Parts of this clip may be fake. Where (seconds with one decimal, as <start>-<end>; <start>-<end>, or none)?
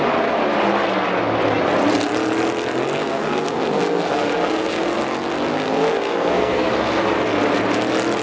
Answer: 3.0-5.0; 5.5-6.7